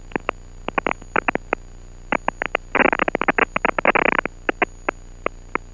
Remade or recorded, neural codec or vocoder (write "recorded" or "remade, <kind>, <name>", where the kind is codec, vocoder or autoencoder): recorded